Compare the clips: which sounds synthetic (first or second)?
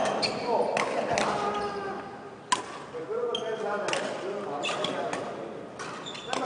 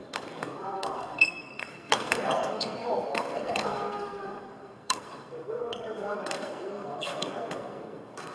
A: second